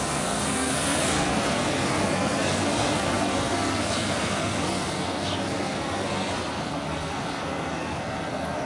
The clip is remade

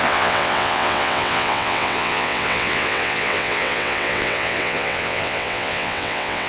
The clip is remade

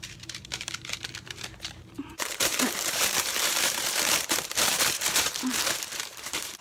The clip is remade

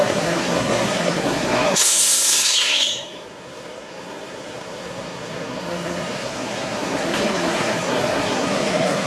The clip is remade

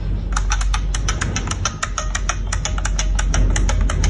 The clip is recorded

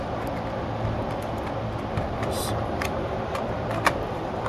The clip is remade